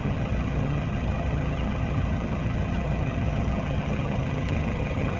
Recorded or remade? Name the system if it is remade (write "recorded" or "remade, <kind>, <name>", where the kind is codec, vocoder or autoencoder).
remade, vocoder, HiFi-GAN